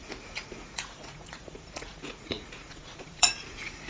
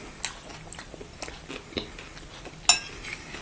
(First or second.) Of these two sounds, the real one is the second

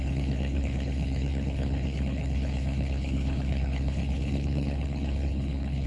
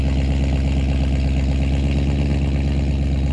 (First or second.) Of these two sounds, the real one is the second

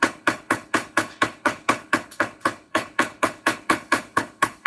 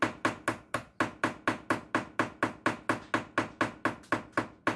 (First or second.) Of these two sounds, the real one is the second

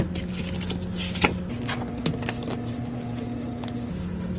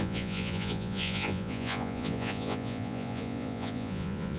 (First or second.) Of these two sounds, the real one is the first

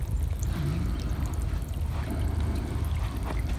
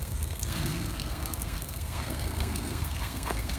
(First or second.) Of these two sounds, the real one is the first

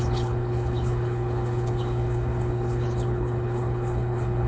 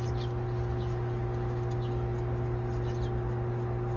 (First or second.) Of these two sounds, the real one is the second